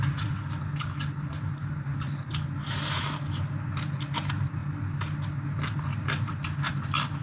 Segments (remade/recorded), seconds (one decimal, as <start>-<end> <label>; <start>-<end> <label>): 0.0-7.2 recorded